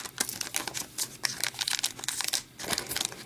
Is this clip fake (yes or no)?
no